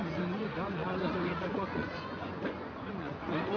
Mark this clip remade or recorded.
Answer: remade